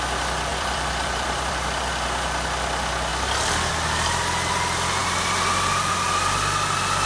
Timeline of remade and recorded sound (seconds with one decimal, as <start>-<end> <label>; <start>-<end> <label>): 0.0-0.5 recorded; 0.5-1.9 remade; 1.9-5.0 recorded; 5.0-5.9 remade; 5.9-7.1 recorded